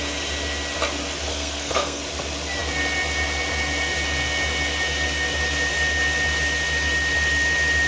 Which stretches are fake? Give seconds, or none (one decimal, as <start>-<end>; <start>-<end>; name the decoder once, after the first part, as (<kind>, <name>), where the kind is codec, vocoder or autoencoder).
1.3-2.0 (codec, SNAC)